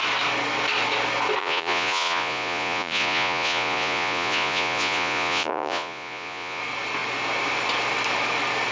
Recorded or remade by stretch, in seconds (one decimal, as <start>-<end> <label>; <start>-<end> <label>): 0.0-1.4 recorded; 1.4-6.6 remade; 6.6-8.7 recorded

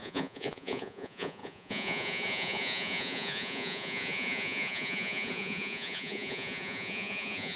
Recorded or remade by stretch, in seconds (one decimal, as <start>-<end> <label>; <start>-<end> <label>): 0.0-7.6 remade

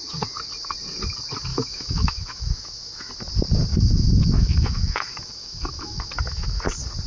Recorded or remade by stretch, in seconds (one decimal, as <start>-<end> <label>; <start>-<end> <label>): 0.0-1.5 recorded; 1.5-3.1 remade; 3.1-3.7 recorded; 3.7-6.6 remade; 6.6-7.1 recorded

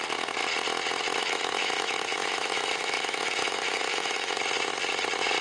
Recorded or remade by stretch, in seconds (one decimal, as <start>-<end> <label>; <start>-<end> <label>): 0.0-1.2 recorded; 1.2-4.4 remade; 4.4-5.4 recorded

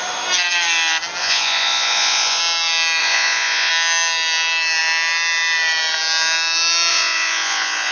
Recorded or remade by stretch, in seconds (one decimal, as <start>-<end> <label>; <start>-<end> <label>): 0.0-1.2 recorded; 1.2-2.4 remade; 2.4-3.0 recorded; 3.0-3.7 remade; 3.7-6.9 recorded; 6.9-7.9 remade

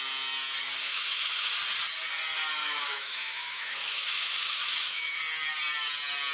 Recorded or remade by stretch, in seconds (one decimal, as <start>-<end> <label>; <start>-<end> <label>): 0.0-0.8 recorded; 0.8-1.5 remade; 1.5-2.6 recorded; 2.6-5.2 remade; 5.2-6.3 recorded

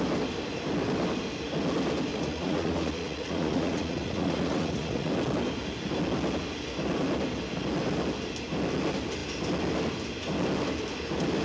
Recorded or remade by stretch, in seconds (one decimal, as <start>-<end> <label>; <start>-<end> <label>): 0.0-2.1 recorded; 2.1-5.1 remade; 5.1-11.4 recorded

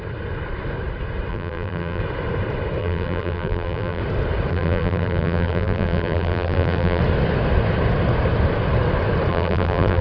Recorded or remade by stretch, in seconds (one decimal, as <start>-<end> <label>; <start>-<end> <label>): 0.0-1.3 recorded; 1.3-2.0 remade; 2.0-2.8 recorded; 2.8-4.0 remade; 4.0-4.5 recorded; 4.5-7.0 remade; 7.0-9.3 recorded; 9.3-10.0 remade